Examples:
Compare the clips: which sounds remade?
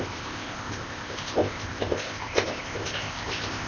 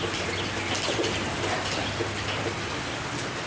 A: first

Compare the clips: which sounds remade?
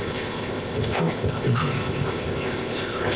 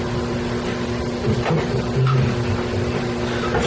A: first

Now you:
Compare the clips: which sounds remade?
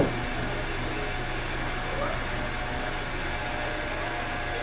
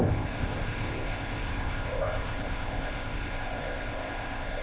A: second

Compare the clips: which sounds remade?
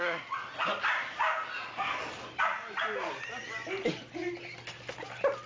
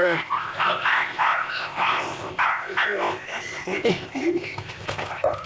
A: second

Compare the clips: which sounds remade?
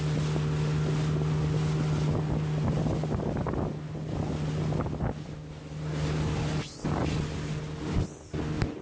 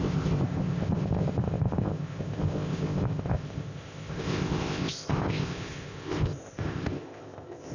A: second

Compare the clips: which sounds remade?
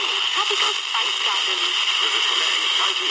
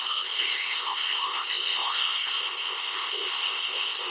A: second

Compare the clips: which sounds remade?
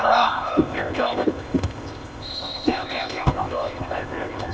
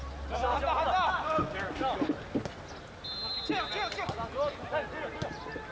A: first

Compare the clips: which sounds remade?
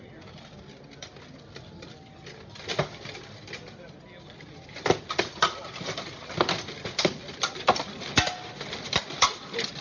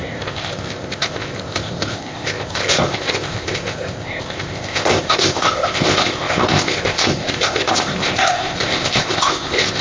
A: second